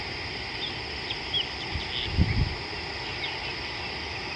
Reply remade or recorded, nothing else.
recorded